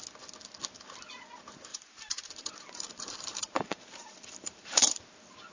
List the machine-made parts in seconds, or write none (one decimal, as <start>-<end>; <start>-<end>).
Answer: 1.7-5.0